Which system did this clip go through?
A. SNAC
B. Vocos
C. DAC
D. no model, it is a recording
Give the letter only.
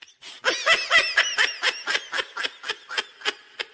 D